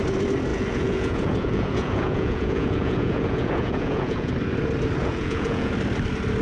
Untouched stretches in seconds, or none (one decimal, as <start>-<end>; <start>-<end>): 0.0-0.5; 4.3-5.0; 5.7-6.4